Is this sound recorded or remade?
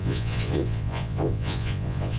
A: remade